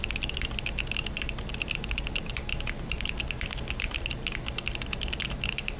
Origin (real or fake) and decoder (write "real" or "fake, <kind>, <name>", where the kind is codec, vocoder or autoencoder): real